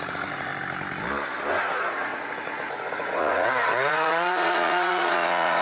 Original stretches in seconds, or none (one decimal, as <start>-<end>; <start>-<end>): 0.5-1.5